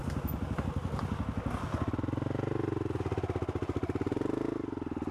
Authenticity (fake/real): real